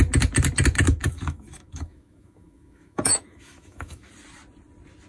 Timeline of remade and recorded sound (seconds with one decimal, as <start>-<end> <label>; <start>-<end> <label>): 0.0-1.0 recorded; 1.0-4.1 remade; 4.1-5.1 recorded